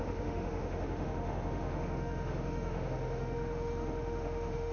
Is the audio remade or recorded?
remade